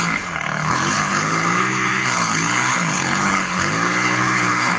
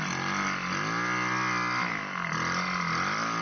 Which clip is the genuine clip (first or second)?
second